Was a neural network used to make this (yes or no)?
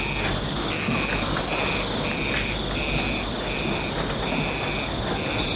no